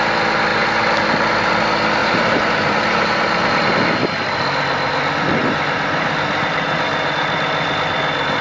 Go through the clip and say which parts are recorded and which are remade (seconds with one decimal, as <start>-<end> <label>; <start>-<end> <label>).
0.0-2.0 recorded; 2.0-3.7 remade; 3.7-5.4 recorded; 5.4-7.2 remade; 7.2-8.4 recorded